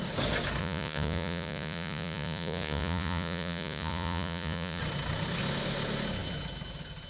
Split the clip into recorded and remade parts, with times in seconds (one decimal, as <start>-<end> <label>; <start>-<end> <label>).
0.0-0.6 recorded; 0.6-4.8 remade; 4.8-7.1 recorded